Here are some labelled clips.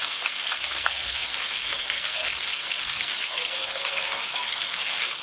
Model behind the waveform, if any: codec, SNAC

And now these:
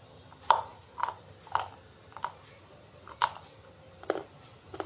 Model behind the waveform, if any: none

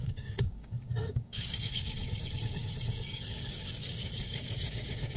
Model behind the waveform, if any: codec, DAC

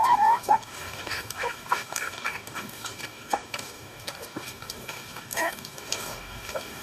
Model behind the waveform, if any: codec, DAC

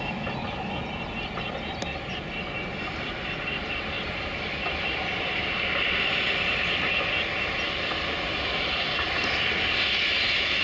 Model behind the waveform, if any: none